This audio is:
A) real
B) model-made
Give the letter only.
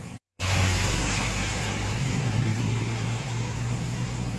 B